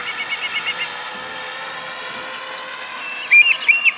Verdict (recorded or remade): recorded